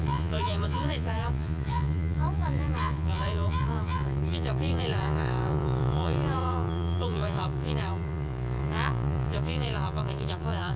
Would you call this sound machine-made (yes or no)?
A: yes